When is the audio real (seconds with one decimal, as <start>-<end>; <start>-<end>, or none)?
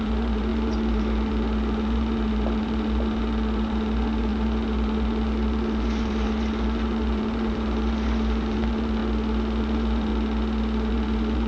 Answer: 9.0-9.6; 10.1-10.9